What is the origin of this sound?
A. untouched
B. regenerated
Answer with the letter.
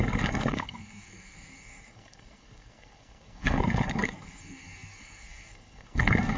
B